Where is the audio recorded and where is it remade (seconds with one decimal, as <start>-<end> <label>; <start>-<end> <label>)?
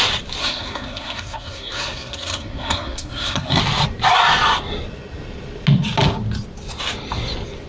0.0-0.4 recorded; 0.4-3.6 remade; 3.6-7.7 recorded